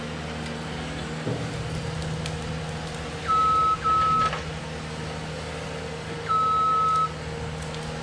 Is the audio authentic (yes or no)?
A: yes